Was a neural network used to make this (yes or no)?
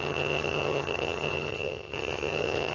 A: yes